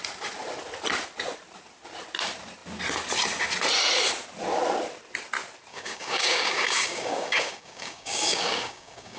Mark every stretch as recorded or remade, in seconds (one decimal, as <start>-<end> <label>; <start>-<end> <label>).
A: 0.0-5.7 recorded; 5.7-9.2 remade